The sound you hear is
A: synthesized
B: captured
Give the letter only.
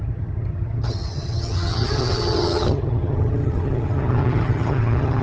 A